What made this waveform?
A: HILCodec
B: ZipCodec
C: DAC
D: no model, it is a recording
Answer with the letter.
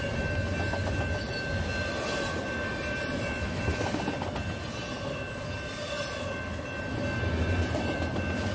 D